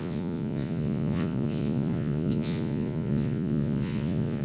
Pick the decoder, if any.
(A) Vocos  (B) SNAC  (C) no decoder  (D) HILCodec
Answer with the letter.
A